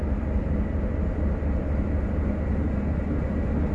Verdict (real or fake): real